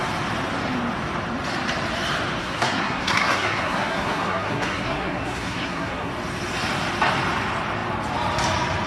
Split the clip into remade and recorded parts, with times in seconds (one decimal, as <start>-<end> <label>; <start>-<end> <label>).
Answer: 0.0-2.4 recorded; 2.4-6.1 remade; 6.1-8.9 recorded